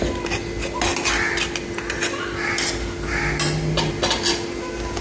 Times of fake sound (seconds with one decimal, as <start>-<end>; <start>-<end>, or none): none